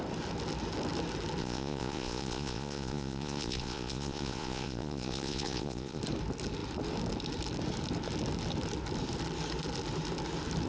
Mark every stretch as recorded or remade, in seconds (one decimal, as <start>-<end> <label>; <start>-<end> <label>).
0.0-1.4 recorded; 1.4-6.0 remade; 6.0-10.7 recorded